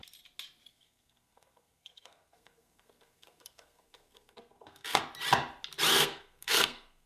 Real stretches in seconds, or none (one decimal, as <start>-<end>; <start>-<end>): 0.0-0.7; 5.0-5.9